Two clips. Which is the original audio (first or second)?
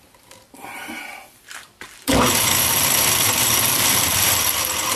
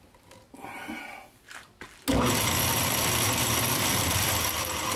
second